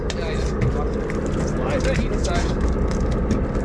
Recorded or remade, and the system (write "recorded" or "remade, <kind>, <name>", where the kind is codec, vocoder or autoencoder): recorded